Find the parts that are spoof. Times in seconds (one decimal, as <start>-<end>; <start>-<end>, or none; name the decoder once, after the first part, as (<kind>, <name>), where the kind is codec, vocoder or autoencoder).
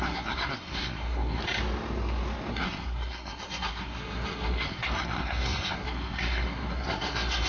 0.0-1.4 (codec, SNAC); 2.5-7.5